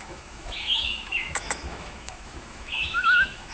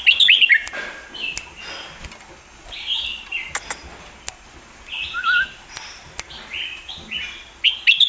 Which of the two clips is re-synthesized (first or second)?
first